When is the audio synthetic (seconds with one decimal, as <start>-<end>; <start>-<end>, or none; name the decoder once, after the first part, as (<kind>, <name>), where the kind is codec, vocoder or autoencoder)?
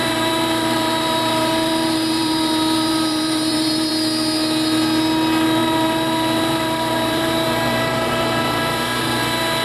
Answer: 0.0-3.9 (vocoder, BigVGAN v2); 5.6-9.2